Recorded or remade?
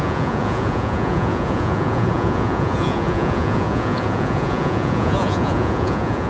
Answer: remade